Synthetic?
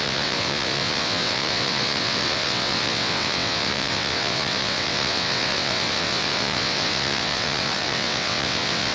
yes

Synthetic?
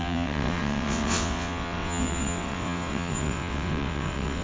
yes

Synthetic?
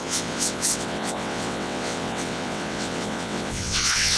yes